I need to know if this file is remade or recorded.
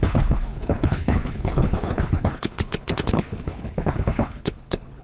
remade